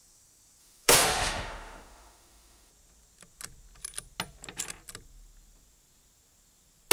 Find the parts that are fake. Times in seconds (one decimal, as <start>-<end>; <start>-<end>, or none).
0.6-2.7

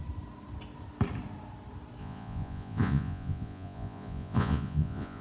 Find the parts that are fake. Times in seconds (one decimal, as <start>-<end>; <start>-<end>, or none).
2.0-5.2

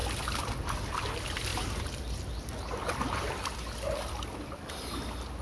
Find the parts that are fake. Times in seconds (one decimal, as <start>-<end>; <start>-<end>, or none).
0.0-1.0; 1.5-4.7

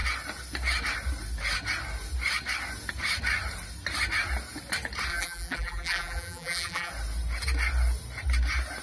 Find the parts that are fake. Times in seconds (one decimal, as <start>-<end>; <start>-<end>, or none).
5.1-6.9

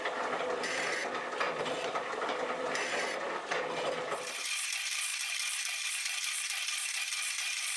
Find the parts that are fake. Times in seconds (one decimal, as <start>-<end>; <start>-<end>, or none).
0.0-1.0; 1.6-5.1; 5.9-7.8